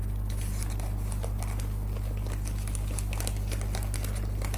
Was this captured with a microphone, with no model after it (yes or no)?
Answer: yes